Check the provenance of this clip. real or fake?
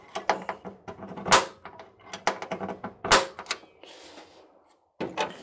real